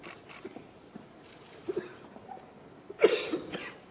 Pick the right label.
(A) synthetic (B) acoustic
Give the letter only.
B